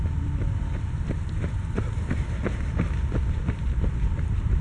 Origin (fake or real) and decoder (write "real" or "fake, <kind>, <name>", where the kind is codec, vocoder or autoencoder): real